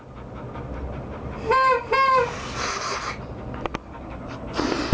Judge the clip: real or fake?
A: real